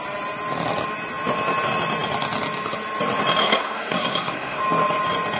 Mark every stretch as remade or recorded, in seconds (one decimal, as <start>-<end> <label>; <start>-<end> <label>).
0.0-3.4 recorded; 3.4-4.6 remade; 4.6-5.4 recorded